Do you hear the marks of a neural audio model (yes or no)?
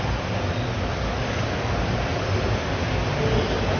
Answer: no